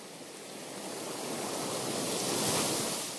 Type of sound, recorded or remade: recorded